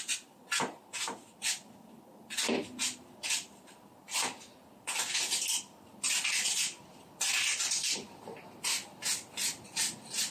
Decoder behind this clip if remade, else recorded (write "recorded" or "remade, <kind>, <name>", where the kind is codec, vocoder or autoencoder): recorded